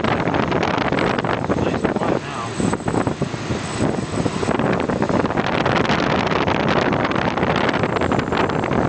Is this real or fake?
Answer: real